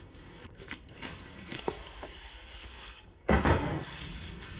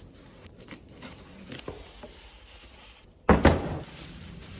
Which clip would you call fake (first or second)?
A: first